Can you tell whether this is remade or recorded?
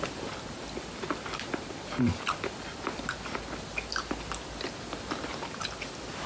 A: recorded